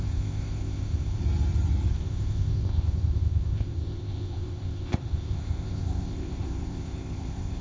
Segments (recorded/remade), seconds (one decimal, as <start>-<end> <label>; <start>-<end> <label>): 0.0-1.2 remade; 1.2-1.9 recorded; 1.9-7.6 remade